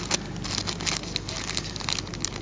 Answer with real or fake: real